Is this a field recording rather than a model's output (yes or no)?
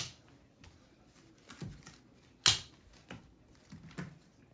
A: yes